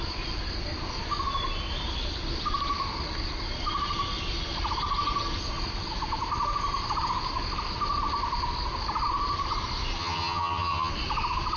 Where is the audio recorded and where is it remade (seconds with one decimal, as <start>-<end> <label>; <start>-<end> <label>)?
0.0-10.0 recorded; 10.0-10.9 remade; 10.9-11.6 recorded